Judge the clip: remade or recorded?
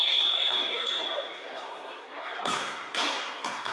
remade